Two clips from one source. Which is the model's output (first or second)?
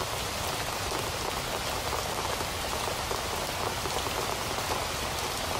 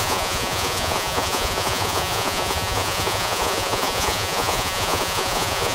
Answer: second